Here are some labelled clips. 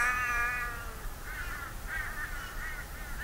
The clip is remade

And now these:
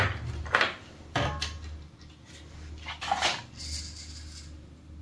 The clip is recorded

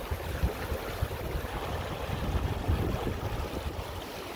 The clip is recorded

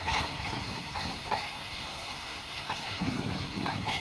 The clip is remade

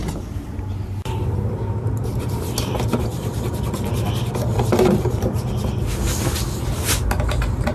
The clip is recorded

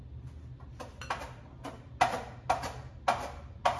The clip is recorded